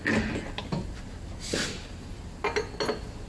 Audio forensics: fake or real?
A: real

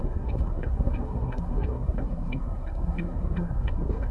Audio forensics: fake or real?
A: fake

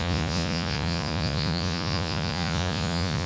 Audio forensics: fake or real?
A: fake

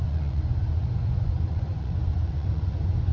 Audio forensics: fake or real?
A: fake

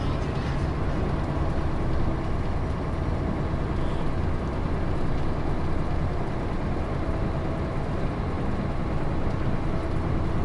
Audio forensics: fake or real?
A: real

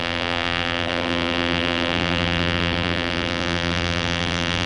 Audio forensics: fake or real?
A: fake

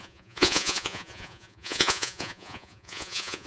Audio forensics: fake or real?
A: fake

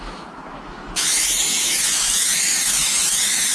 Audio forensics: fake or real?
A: fake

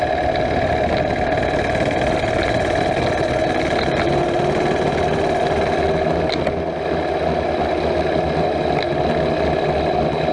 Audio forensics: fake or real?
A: real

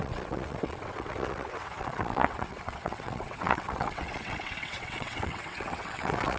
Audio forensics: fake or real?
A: fake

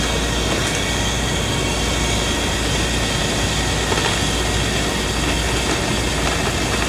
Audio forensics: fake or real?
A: real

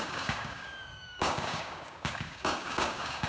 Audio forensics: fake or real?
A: fake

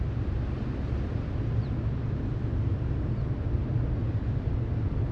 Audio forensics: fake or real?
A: real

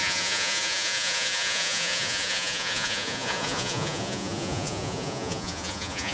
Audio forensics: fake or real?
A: fake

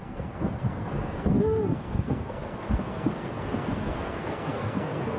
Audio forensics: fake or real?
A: fake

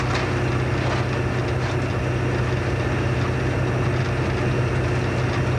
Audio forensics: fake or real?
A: real